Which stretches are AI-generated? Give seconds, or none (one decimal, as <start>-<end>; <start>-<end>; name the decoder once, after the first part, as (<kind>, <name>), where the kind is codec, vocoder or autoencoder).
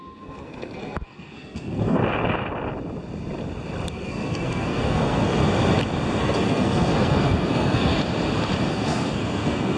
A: 0.0-2.0 (codec, SNAC); 3.9-5.4; 6.2-7.9; 8.7-9.8